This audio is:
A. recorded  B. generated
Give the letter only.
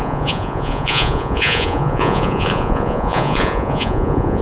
B